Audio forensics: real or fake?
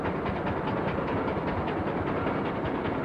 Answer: real